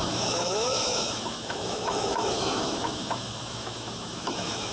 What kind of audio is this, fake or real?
fake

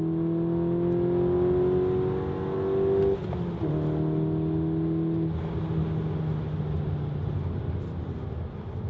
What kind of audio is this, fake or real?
real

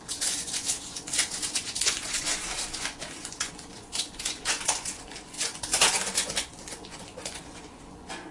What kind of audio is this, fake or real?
fake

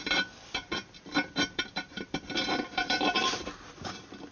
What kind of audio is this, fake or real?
fake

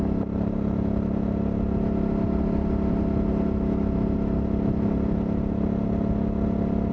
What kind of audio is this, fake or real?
real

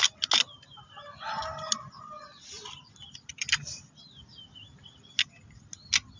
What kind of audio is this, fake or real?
real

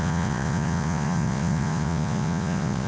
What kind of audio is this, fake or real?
fake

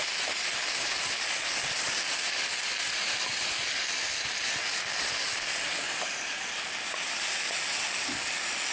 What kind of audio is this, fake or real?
real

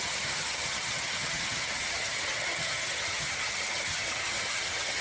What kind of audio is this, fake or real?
fake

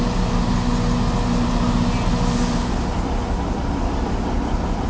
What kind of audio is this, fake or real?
real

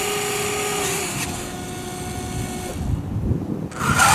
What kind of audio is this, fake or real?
real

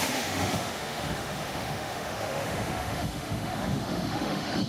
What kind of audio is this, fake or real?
fake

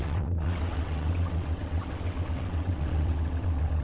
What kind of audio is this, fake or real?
fake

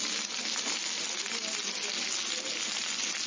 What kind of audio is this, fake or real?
real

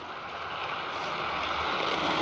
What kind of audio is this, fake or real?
real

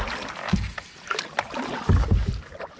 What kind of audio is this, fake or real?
real